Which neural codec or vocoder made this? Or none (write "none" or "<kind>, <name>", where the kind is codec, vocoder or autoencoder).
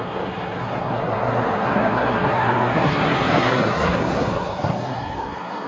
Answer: codec, SNAC